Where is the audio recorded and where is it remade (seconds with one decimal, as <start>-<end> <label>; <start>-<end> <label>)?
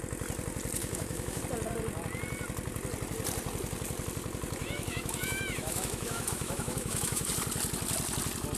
0.0-0.8 recorded; 0.8-1.4 remade; 1.4-4.6 recorded; 4.6-7.3 remade; 7.3-8.6 recorded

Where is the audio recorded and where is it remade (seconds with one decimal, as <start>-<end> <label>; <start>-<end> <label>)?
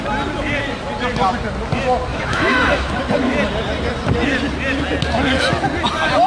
0.0-2.1 recorded; 2.1-2.9 remade; 2.9-6.3 recorded